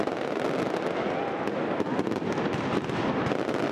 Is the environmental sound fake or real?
real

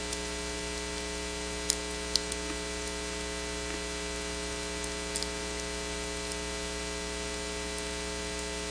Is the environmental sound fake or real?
real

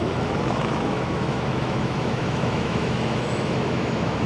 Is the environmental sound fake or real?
fake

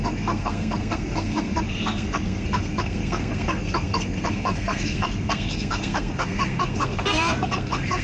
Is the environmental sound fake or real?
fake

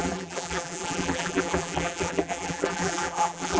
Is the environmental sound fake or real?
fake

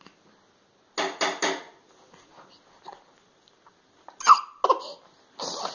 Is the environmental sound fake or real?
real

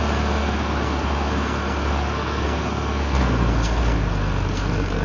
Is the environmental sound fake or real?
fake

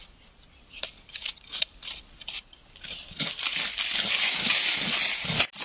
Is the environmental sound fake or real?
real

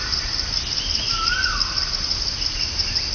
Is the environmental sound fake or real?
real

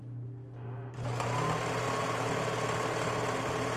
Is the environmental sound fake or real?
real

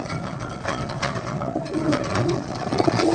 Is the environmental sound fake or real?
fake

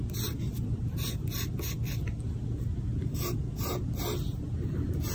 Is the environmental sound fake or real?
real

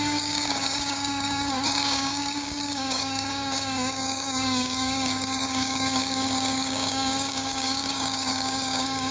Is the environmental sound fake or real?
fake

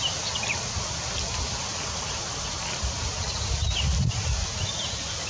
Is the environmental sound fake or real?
real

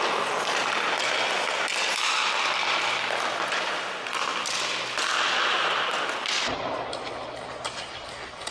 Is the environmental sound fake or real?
real